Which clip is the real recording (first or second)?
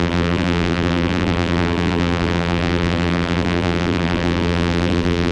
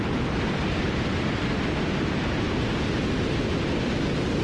second